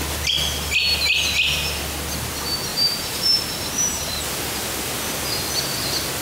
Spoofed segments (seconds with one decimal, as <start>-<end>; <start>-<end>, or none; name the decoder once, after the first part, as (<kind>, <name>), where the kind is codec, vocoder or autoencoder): 2.7-4.2 (vocoder, BigVGAN v2)